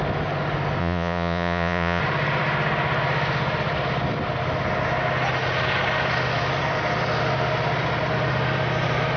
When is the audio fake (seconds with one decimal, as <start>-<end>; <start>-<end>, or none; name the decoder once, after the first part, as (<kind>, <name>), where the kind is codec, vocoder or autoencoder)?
0.8-2.0 (vocoder, Vocos)